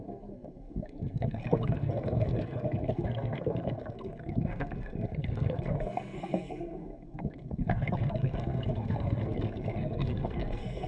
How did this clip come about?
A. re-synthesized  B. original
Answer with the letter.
A